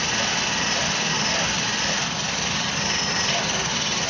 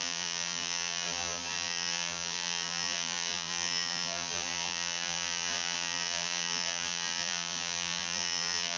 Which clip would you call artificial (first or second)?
second